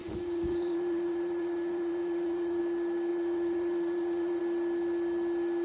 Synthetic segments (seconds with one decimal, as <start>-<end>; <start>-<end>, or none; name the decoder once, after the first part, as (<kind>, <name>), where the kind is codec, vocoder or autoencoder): 0.0-2.6 (vocoder, Vocos); 3.1-4.4